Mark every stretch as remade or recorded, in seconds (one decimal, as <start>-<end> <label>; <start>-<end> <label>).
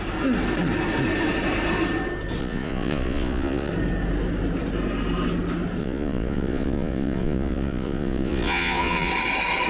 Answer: 0.0-2.4 recorded; 2.4-3.7 remade; 3.7-5.8 recorded; 5.8-9.1 remade; 9.1-9.7 recorded